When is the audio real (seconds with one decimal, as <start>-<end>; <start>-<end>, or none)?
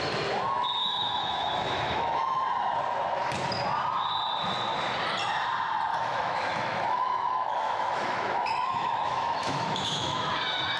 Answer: 0.0-0.8; 2.4-5.9; 10.3-10.8